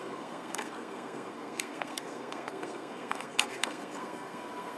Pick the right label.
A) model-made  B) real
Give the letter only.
A